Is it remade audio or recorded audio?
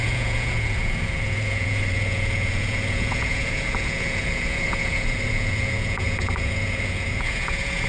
remade